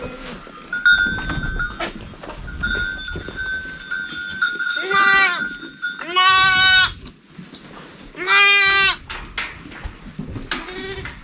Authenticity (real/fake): real